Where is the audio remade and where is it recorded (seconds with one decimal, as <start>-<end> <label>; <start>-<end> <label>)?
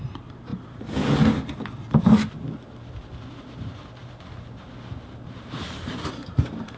0.0-0.5 remade; 0.5-2.9 recorded; 2.9-6.8 remade